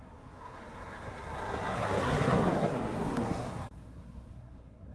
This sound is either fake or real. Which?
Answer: fake